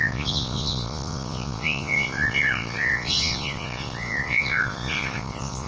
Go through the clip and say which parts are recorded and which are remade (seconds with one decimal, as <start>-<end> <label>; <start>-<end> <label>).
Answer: 0.0-5.7 remade